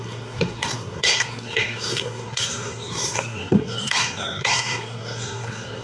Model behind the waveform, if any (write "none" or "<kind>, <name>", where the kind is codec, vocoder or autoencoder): codec, SNAC